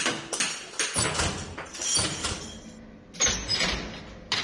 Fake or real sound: real